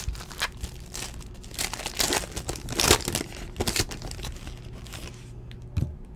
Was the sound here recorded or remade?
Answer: recorded